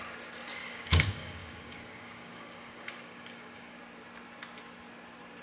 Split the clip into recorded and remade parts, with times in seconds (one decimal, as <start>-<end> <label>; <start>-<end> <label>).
0.0-0.6 recorded; 0.6-3.8 remade; 3.8-5.4 recorded